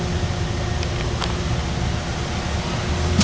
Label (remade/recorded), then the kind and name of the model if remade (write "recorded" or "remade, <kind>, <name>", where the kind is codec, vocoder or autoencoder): recorded